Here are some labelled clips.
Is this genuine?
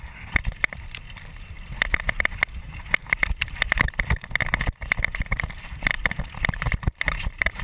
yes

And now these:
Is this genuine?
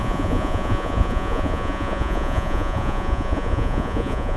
no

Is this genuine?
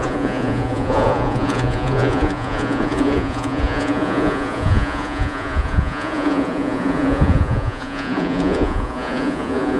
no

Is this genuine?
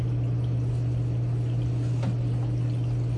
yes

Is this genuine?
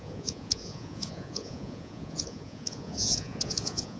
no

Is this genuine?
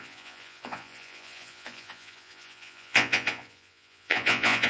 no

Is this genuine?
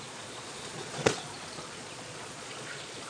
no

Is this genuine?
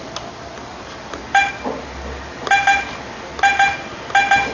yes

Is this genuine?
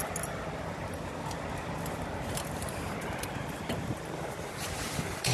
yes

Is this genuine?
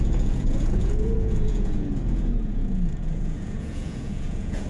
no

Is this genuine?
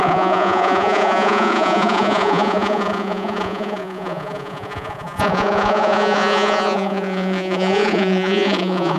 no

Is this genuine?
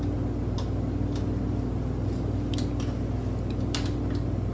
yes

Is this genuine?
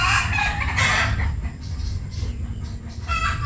yes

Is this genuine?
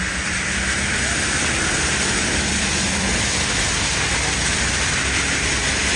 yes